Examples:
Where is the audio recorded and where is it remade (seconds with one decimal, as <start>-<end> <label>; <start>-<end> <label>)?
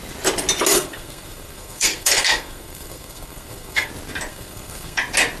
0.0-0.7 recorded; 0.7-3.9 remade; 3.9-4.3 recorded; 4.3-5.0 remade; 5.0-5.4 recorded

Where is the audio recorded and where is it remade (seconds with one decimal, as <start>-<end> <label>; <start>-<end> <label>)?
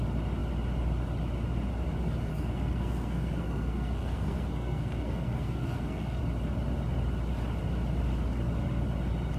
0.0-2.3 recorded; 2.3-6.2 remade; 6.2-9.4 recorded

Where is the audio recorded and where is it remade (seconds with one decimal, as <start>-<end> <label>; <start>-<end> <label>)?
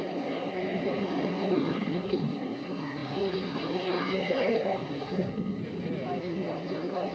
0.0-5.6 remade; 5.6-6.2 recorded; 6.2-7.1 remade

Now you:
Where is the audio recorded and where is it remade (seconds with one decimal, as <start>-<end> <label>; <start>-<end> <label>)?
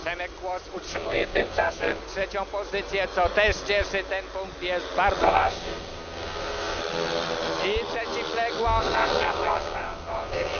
0.0-0.9 recorded; 0.9-2.0 remade; 2.0-5.2 recorded; 5.2-6.8 remade; 6.8-8.8 recorded; 8.8-10.6 remade